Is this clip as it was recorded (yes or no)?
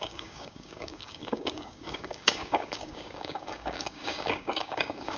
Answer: no